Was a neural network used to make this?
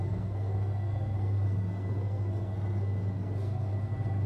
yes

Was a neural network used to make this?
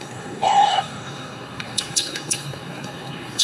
yes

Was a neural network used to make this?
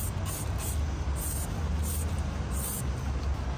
no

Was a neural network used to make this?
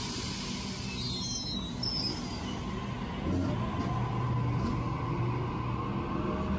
no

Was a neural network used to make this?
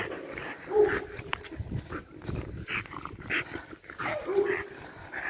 no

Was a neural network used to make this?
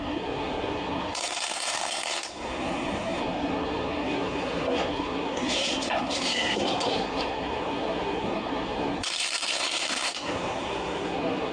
yes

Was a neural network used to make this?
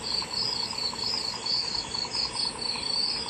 no